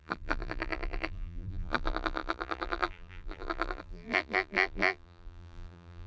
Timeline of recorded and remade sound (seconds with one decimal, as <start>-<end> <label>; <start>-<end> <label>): 0.0-6.1 remade